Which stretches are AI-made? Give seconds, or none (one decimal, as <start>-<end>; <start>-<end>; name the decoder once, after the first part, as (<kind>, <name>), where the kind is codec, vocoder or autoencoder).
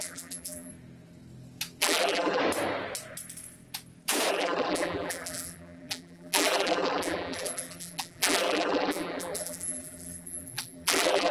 0.0-0.7 (vocoder, BigVGAN v2); 1.8-2.4; 4.3-11.3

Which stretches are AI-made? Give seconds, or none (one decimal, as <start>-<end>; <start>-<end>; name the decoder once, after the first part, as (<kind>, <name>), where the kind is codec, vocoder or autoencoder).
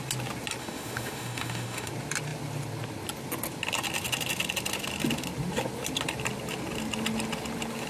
0.6-1.9 (autoencoder, DAC-VAE)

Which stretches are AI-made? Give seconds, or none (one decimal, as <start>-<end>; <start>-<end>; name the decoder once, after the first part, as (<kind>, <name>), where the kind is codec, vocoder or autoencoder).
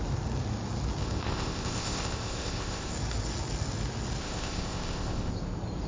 1.0-2.9 (codec, ZipCodec); 4.2-5.3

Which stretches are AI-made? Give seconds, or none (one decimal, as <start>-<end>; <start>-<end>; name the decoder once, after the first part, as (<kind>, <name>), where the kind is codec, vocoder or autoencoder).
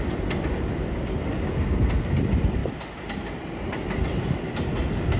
1.5-2.1 (codec, SNAC)